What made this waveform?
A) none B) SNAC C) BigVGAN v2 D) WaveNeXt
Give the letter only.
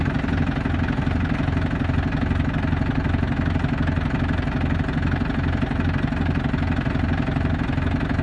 A